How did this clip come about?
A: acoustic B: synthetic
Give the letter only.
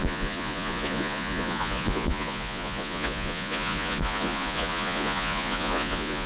B